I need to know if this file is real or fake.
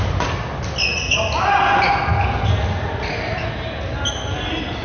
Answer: real